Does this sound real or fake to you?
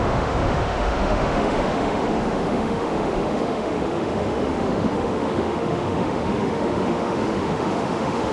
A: fake